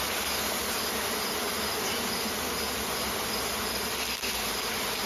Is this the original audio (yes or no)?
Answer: yes